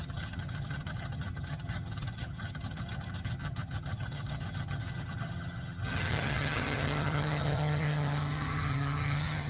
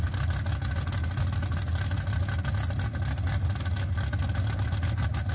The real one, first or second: second